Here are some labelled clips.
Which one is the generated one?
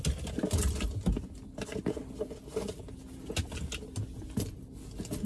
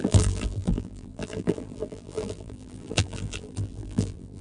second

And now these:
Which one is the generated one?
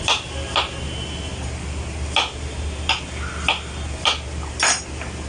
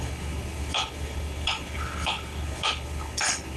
second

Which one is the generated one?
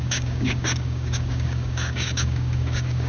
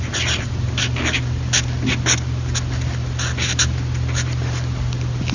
first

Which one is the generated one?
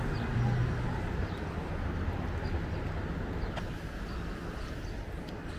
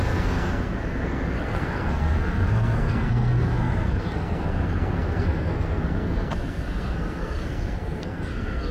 second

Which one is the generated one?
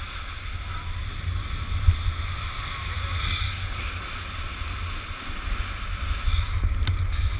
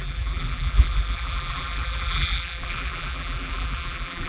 second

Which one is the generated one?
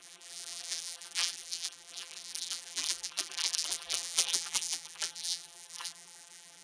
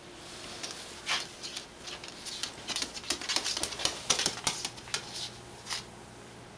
first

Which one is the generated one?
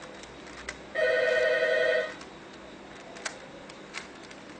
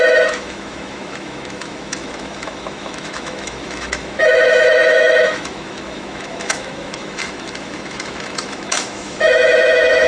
second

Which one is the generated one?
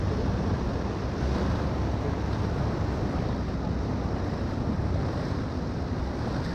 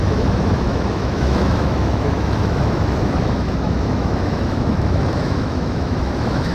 second